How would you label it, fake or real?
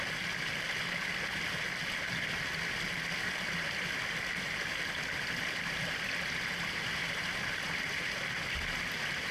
real